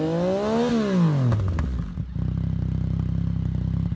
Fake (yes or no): no